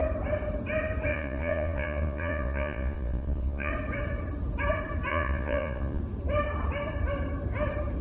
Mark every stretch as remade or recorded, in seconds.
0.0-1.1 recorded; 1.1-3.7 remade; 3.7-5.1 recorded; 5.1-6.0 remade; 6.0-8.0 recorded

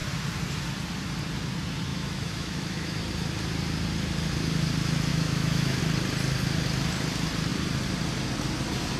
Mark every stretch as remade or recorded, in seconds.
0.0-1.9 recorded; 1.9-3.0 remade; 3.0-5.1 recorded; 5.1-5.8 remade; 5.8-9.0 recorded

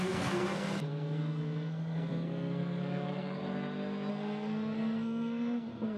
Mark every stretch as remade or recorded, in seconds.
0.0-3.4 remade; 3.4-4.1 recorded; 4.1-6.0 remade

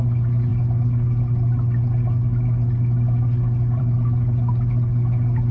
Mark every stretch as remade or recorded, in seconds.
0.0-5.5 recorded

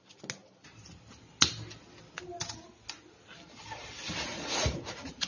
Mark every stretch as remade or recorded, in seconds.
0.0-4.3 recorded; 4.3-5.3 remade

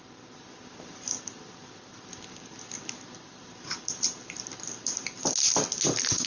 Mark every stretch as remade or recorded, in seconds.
0.0-3.4 recorded; 3.4-5.3 remade; 5.3-6.3 recorded

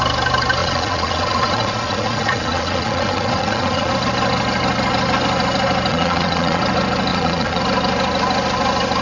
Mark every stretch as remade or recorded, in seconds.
0.0-0.6 recorded; 0.6-3.9 remade; 3.9-5.9 recorded; 5.9-6.6 remade; 6.6-7.1 recorded; 7.1-7.6 remade; 7.6-9.0 recorded